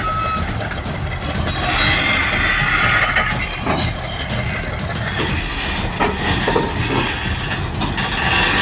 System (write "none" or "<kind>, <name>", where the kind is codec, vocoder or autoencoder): none